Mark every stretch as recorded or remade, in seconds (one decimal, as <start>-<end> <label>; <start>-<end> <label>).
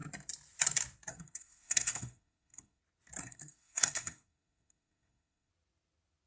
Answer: 0.0-1.1 recorded; 1.1-2.8 remade; 2.8-3.2 recorded; 3.2-5.5 remade; 5.5-6.3 recorded